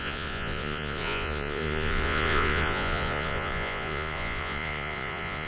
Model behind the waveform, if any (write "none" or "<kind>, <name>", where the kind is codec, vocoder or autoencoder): vocoder, Vocos